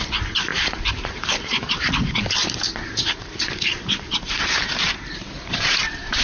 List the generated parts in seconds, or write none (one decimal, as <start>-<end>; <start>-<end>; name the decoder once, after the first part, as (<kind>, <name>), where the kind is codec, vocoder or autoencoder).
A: 0.5-1.9 (vocoder, BigVGAN v2); 2.4-6.2